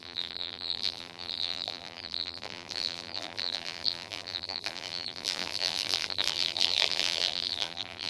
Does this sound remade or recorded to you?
remade